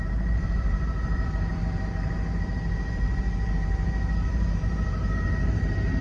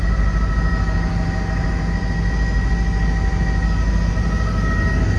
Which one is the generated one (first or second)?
first